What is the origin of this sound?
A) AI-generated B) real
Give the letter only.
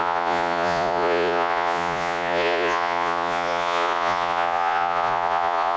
A